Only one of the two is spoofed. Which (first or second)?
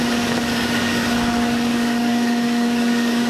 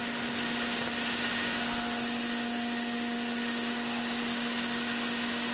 first